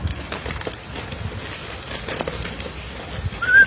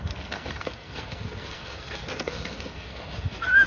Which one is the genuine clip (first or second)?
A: first